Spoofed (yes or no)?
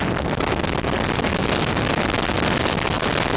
no